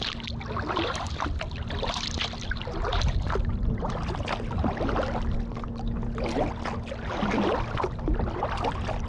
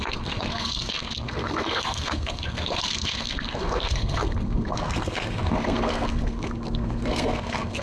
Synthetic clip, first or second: second